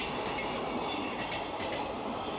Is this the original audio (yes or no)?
yes